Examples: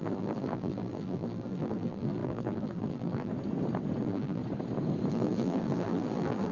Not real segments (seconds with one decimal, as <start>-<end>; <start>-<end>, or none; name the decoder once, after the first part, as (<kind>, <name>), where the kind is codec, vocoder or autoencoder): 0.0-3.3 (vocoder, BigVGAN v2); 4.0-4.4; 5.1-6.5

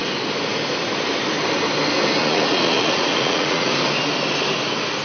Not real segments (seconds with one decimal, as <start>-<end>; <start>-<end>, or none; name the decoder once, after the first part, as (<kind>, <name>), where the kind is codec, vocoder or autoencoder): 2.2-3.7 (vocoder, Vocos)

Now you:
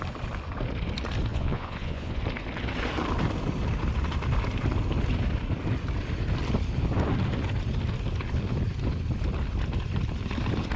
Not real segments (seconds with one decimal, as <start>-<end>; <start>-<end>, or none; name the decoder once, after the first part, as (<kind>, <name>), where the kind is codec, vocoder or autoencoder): 1.3-2.2 (vocoder, Vocos)

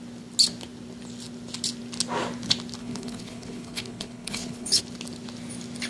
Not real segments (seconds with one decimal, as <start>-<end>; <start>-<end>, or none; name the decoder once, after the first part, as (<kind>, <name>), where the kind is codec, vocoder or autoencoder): 2.8-4.8 (codec, HILCodec)

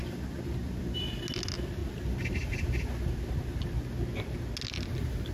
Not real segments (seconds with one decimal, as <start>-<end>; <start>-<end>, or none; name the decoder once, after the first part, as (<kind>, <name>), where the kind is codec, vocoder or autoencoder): none